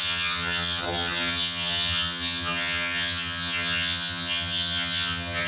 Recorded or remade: remade